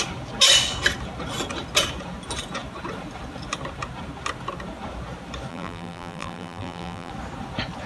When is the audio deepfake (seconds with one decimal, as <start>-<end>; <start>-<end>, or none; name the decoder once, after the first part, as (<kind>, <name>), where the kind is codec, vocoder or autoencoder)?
5.5-7.1 (vocoder, BigVGAN v2)